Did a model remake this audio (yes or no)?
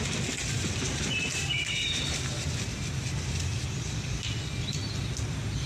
no